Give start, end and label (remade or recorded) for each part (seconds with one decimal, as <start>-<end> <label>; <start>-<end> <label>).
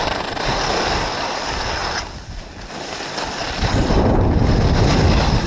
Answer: 0.0-5.5 recorded